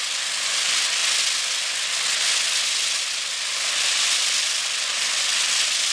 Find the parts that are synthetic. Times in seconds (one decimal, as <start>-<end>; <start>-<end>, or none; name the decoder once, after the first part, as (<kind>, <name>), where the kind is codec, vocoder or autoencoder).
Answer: none